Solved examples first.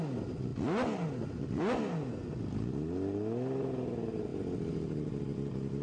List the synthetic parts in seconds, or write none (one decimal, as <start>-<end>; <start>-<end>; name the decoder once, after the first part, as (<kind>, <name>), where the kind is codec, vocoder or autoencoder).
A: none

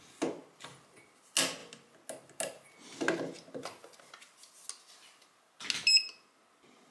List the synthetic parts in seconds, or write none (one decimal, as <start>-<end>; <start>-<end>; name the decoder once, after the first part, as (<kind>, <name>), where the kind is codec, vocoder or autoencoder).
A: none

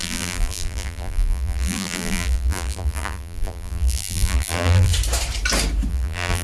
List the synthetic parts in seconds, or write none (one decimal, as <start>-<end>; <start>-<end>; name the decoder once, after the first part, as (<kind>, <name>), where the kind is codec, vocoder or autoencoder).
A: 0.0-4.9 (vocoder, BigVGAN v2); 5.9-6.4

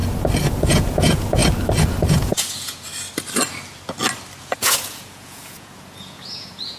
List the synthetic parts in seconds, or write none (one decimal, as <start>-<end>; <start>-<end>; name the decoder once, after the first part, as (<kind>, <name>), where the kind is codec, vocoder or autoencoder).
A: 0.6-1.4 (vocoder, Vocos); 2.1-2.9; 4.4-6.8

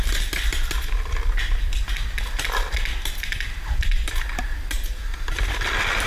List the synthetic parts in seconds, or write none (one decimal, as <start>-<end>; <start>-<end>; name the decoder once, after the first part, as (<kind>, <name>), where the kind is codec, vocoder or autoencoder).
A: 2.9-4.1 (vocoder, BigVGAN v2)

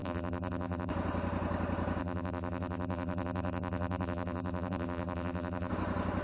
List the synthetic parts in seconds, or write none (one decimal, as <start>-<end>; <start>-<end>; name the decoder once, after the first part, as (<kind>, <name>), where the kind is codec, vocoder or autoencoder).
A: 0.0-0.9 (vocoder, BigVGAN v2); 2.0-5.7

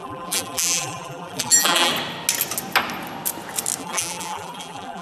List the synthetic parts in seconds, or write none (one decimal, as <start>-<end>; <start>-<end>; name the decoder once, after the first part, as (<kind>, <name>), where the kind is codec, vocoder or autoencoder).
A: 0.0-1.9 (vocoder, BigVGAN v2); 3.8-5.0

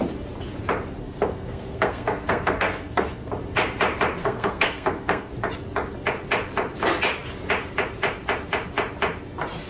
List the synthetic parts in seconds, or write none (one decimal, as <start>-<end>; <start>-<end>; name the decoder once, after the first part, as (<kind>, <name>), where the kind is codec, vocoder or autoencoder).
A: 1.0-3.3 (codec, SNAC); 4.2-5.3